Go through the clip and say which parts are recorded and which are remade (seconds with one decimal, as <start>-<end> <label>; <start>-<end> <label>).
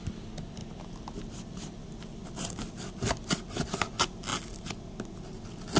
0.0-5.8 recorded